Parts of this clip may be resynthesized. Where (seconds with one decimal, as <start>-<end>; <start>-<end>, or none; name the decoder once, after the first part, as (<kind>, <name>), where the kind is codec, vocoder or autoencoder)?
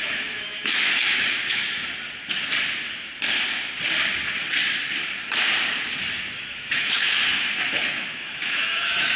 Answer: 0.0-1.6 (autoencoder, DAC-VAE); 6.4-9.2